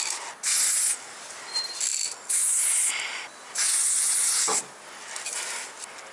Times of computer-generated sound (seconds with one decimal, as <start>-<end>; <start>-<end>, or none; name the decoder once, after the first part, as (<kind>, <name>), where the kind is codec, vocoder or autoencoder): none